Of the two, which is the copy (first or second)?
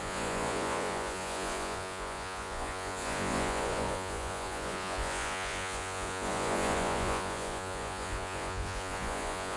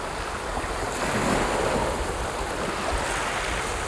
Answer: first